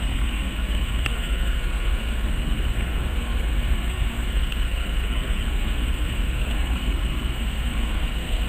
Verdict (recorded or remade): remade